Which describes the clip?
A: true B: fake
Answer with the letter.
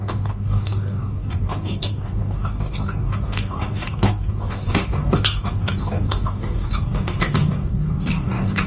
B